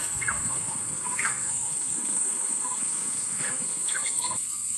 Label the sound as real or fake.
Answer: fake